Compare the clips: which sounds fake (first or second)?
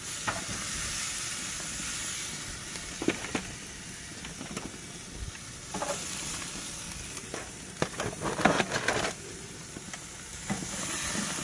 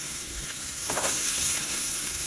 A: second